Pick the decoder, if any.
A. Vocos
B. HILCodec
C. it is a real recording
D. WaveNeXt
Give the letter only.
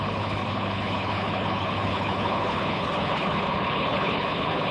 B